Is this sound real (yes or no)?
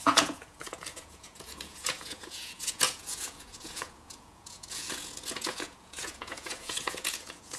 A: no